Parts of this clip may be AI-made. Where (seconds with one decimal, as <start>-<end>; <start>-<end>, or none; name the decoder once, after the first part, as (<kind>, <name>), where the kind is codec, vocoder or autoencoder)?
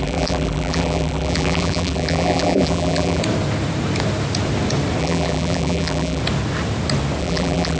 0.0-3.2 (vocoder, BigVGAN v2); 5.0-6.2; 7.2-7.8